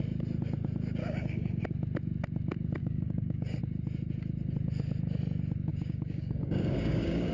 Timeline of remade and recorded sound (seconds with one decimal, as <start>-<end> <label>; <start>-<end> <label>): 0.0-1.0 recorded; 1.0-1.6 remade; 1.6-2.8 recorded; 2.8-3.6 remade; 3.6-5.7 recorded; 5.7-7.3 remade